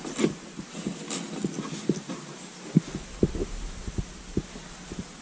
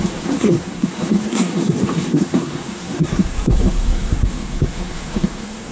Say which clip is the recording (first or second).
first